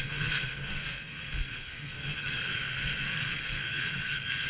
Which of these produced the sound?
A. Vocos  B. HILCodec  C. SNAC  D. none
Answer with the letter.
C